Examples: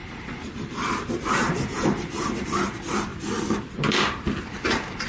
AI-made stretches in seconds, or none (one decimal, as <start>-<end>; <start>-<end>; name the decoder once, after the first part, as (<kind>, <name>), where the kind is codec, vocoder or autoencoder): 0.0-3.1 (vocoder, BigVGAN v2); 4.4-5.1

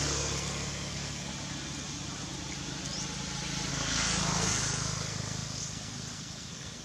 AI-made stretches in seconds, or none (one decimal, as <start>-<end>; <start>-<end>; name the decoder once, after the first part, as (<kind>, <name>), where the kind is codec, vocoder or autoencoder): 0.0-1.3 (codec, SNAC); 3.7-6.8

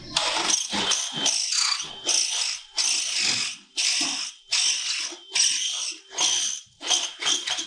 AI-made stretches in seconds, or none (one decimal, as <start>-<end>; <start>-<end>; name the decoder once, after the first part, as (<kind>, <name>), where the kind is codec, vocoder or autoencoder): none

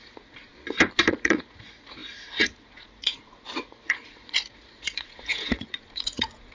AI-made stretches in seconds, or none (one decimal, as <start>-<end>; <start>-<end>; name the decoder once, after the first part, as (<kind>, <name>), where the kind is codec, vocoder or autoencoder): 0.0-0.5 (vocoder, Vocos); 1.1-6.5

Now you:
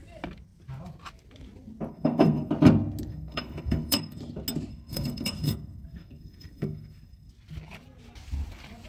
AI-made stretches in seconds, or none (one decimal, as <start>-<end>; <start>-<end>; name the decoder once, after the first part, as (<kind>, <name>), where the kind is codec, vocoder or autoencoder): 1.9-2.5 (codec, SNAC); 3.1-4.2; 4.7-7.3

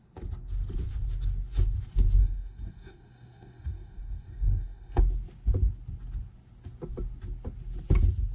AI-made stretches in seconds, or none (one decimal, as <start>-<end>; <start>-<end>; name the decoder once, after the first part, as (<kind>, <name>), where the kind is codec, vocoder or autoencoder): 2.2-5.0 (codec, SNAC)